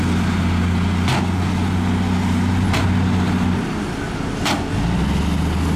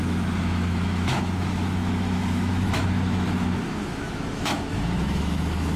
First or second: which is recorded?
first